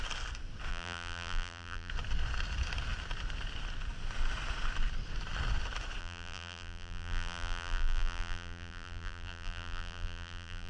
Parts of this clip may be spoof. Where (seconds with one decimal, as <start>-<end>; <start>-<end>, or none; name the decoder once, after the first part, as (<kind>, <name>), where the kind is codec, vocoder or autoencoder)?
0.7-1.9 (vocoder, BigVGAN v2); 6.0-10.7